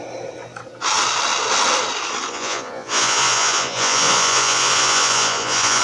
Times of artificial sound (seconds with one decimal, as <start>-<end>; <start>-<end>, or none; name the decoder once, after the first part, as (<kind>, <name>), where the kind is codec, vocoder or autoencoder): 2.3-5.8 (vocoder, Vocos)